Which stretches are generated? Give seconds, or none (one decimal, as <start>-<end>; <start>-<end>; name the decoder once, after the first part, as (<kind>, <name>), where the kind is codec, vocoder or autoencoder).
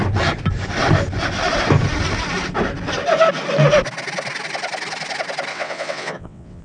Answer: 5.5-6.6 (vocoder, WaveNeXt)